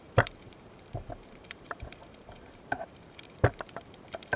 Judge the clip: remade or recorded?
remade